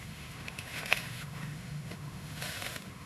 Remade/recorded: remade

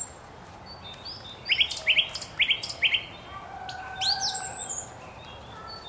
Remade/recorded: recorded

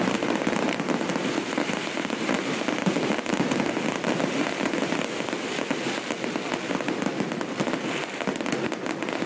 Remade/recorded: recorded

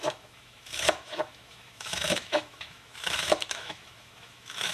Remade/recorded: remade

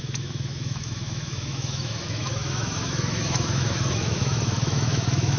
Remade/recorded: remade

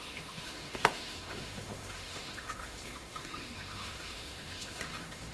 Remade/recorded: remade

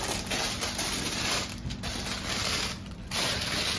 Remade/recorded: recorded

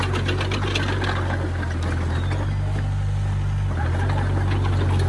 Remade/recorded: recorded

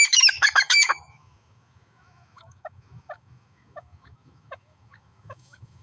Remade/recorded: remade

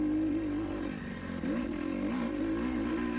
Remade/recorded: recorded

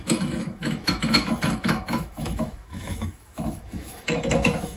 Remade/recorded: remade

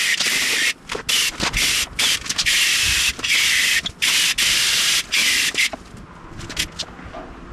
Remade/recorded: recorded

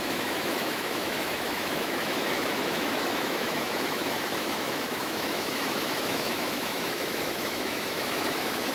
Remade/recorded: remade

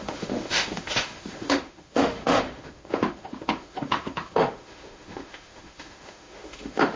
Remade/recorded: remade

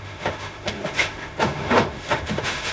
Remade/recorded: remade